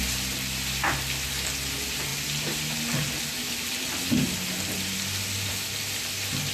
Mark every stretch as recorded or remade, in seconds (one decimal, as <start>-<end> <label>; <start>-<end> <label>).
0.0-6.5 recorded